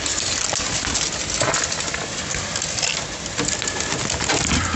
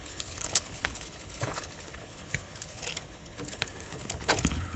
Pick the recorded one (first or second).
first